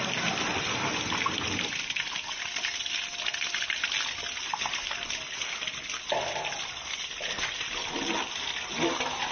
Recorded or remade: recorded